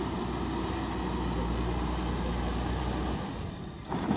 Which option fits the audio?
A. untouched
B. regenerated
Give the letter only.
A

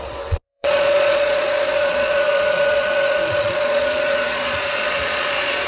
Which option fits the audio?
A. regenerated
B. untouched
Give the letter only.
A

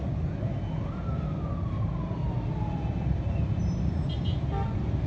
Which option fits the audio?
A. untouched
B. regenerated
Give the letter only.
A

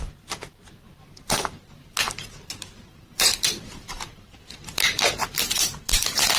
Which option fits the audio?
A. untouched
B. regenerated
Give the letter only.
B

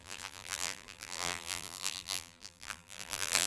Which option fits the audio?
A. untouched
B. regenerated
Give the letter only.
B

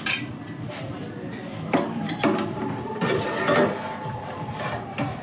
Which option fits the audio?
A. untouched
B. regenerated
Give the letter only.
B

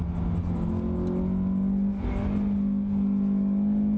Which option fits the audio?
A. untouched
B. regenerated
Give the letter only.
A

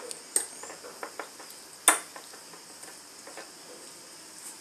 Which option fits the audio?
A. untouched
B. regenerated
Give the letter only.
A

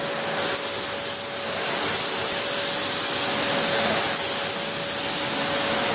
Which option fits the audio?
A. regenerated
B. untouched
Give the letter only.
B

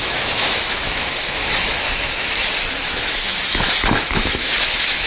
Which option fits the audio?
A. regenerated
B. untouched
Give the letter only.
A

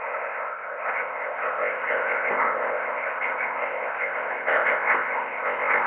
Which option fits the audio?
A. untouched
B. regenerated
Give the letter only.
B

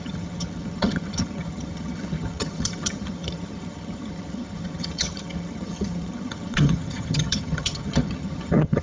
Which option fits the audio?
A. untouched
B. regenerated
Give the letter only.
B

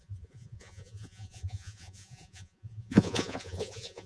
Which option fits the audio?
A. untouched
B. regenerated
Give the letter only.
B